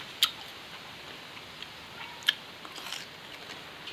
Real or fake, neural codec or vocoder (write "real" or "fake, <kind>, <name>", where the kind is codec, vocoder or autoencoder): real